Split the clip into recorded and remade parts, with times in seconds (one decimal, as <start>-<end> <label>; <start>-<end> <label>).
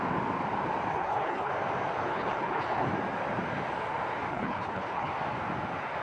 0.0-0.9 recorded; 0.9-1.5 remade; 1.5-2.1 recorded; 2.1-2.9 remade; 2.9-4.3 recorded; 4.3-5.1 remade; 5.1-6.0 recorded